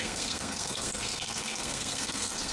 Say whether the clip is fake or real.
fake